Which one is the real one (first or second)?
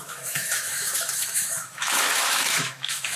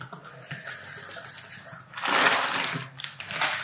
second